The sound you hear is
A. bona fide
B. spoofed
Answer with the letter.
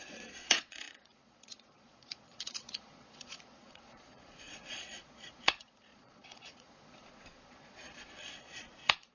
B